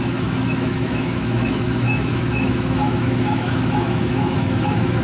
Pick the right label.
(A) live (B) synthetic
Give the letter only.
B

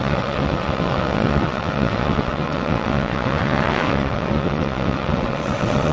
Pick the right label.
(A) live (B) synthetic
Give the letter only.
B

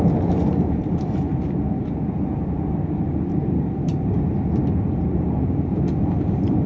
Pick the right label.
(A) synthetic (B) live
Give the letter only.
A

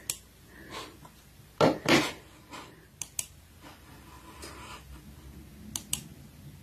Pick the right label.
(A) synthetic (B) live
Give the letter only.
B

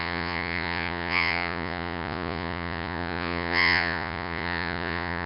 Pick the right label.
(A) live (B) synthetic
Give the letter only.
B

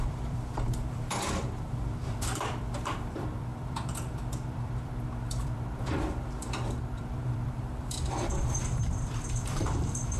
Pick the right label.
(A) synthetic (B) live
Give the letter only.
A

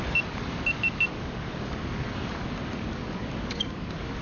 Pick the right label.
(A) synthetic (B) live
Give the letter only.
A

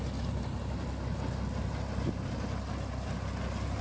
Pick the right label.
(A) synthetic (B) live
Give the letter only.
B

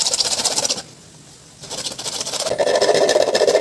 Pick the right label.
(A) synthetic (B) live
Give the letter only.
B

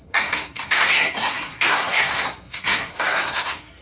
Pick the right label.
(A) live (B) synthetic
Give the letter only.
B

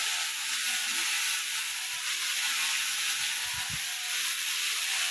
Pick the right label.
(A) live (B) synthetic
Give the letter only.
A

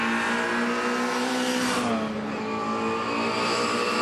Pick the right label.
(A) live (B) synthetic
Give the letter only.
A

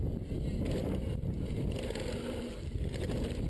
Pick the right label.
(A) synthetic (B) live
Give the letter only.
B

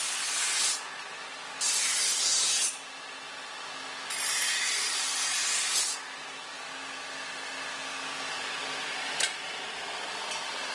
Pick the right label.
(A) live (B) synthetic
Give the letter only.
A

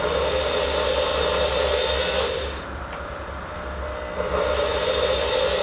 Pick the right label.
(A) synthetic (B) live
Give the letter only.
B